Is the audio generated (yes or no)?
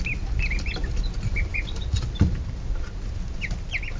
no